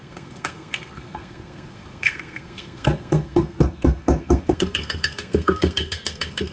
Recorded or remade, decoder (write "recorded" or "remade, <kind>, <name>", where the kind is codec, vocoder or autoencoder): remade, codec, SNAC